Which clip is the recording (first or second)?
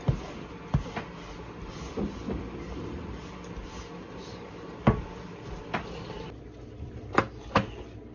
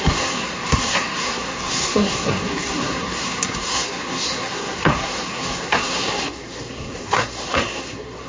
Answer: first